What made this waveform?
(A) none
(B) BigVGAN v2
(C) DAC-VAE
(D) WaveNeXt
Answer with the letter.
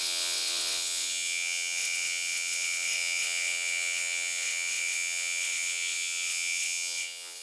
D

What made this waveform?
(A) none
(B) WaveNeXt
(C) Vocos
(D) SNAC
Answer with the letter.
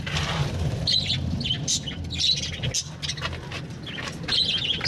A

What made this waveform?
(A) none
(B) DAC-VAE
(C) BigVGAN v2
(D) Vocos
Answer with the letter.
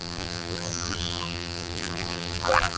C